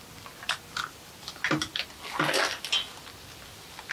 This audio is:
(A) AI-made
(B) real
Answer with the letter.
B